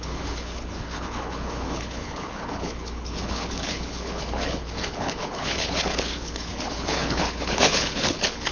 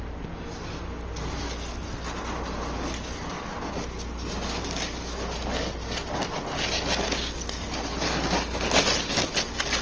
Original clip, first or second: second